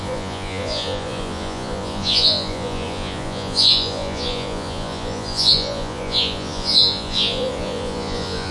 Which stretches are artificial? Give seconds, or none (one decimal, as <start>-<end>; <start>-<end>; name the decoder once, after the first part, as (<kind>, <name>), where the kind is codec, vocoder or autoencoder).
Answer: 0.0-8.5 (vocoder, Vocos)